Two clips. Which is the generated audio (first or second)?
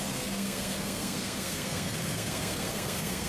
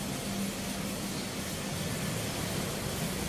first